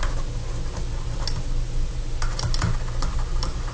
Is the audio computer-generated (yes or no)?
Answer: no